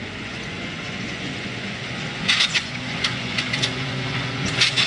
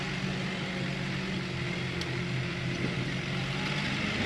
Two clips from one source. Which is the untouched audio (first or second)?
second